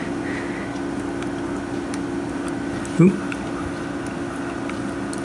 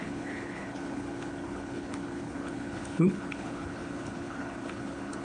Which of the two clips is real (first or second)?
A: first